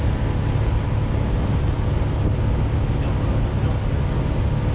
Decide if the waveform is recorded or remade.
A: recorded